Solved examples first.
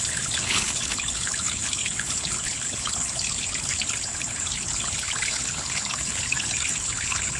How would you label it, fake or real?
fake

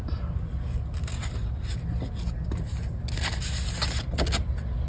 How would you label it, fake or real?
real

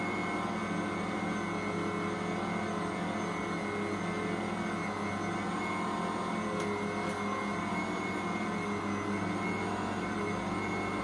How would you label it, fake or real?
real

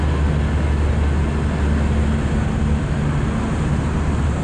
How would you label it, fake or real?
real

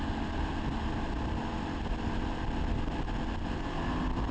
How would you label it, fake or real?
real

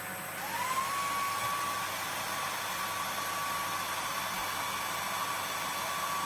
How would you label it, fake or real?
real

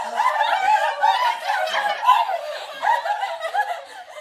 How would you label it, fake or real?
real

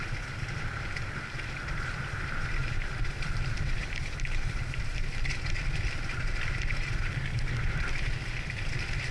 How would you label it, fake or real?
fake